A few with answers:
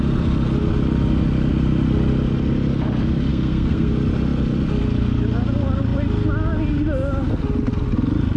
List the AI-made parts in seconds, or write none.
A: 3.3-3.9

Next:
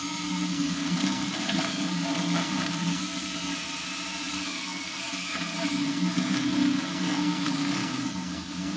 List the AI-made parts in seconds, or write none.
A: 0.0-3.5; 4.3-8.8

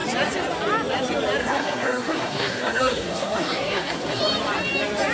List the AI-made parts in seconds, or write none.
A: 1.4-4.2

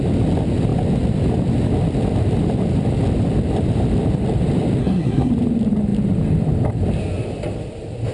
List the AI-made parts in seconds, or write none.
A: 4.8-5.3

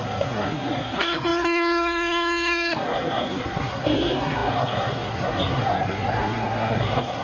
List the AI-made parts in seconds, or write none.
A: 0.0-7.2

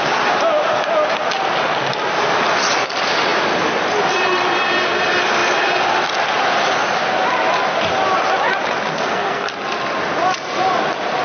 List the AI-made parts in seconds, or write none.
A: 8.9-9.5

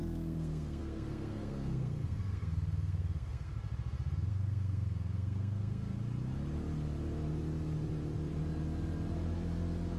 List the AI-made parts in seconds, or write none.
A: 0.0-3.5; 4.3-5.9